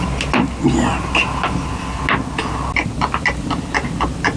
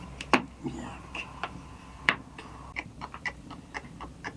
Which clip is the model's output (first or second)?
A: second